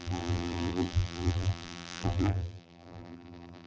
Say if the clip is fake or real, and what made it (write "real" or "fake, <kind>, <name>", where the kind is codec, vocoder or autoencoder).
fake, vocoder, BigVGAN v2